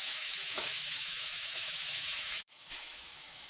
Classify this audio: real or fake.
fake